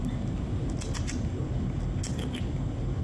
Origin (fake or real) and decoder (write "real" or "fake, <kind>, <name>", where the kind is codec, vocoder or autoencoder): real